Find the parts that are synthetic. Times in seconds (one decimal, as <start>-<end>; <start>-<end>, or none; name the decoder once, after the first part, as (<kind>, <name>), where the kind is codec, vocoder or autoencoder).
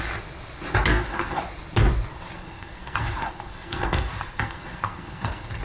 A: 0.9-1.4 (codec, SNAC); 2.1-5.6